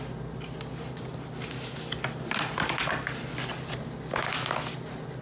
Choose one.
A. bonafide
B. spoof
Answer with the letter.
A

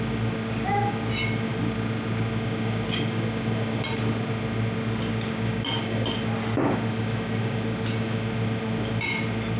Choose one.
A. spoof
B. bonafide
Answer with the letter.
B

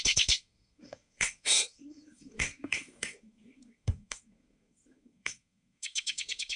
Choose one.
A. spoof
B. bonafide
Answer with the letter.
A